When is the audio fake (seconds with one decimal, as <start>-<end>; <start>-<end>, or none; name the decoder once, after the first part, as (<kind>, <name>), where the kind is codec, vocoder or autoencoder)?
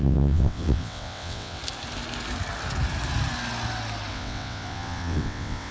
0.0-1.6 (vocoder, WaveNeXt); 4.1-5.7